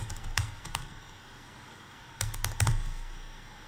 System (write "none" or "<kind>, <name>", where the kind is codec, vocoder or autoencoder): codec, SNAC